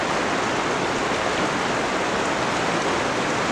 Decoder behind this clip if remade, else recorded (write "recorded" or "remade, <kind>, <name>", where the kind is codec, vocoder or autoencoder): recorded